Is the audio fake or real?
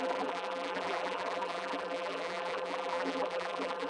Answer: fake